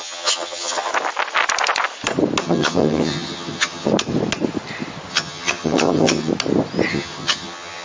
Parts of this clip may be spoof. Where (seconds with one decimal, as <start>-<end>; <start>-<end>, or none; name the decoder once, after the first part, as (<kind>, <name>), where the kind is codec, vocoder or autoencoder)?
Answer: 0.0-0.9 (vocoder, HiFi-GAN); 2.4-3.9; 5.1-6.3; 6.9-7.8